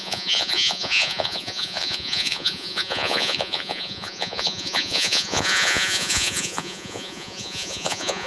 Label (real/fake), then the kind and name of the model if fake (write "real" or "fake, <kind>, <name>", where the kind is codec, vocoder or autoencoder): fake, vocoder, Vocos